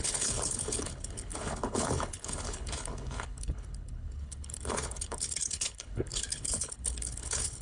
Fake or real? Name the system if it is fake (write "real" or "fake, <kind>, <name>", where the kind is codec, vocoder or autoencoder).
fake, codec, HILCodec